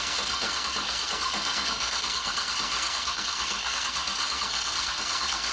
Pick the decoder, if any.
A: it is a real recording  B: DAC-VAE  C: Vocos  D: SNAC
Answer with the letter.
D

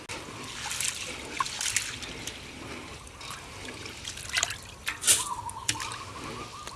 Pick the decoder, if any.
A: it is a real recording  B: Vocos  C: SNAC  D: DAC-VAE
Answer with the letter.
A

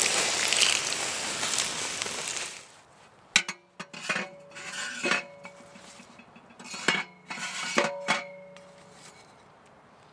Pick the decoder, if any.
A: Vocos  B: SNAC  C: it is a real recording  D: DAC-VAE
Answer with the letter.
C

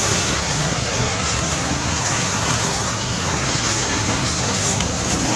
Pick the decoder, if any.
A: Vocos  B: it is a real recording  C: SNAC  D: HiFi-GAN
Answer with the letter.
C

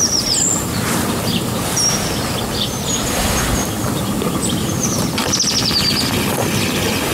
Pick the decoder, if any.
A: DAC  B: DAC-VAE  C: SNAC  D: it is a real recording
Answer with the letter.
D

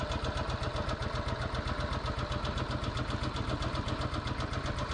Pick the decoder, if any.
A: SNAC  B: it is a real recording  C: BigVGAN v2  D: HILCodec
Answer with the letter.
B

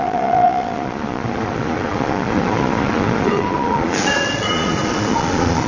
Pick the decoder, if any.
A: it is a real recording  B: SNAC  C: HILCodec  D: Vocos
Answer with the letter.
D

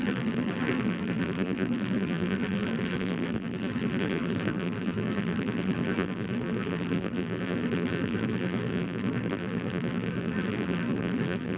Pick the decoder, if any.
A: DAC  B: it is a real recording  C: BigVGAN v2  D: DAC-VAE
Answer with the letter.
C